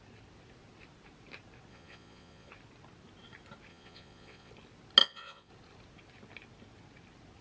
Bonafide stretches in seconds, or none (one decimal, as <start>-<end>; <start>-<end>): 0.0-1.7; 2.5-3.7; 4.5-5.0; 5.5-7.4